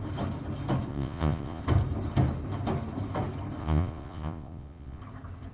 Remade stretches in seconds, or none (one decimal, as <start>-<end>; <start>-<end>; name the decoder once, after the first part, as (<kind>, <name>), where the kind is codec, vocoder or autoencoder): 0.9-1.6 (vocoder, Vocos); 3.6-5.0